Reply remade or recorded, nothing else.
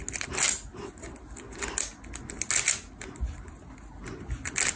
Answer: recorded